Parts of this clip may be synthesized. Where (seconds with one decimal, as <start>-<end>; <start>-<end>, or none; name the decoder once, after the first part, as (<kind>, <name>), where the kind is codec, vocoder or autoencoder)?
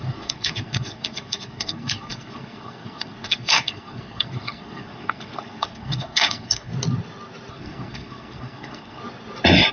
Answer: 0.0-6.7 (codec, SNAC); 7.5-9.0